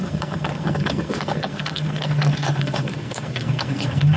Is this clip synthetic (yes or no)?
yes